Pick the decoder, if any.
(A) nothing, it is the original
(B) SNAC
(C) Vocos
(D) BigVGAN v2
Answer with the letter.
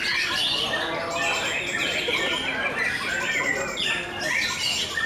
A